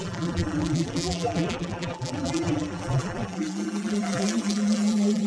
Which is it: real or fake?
fake